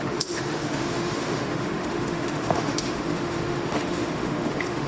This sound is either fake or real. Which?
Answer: fake